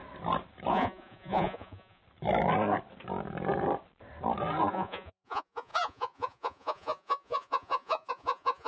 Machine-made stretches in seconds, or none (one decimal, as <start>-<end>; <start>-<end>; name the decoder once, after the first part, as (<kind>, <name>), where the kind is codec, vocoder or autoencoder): 0.7-2.0 (vocoder, Vocos); 4.7-8.7